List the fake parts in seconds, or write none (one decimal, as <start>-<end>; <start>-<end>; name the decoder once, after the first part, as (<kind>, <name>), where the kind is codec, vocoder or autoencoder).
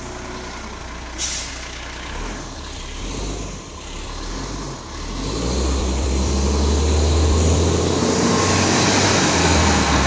9.4-10.1 (codec, SNAC)